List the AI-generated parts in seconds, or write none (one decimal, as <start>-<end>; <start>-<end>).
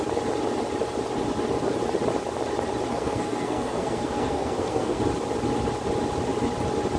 2.9-5.0